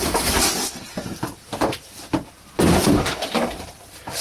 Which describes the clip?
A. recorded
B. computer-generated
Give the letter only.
B